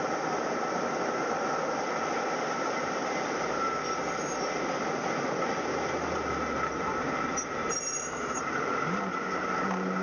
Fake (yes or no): no